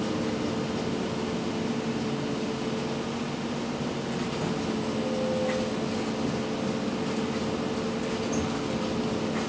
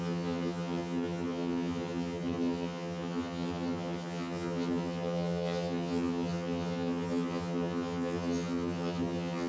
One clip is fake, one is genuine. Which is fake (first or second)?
second